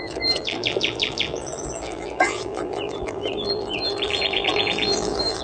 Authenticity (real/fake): fake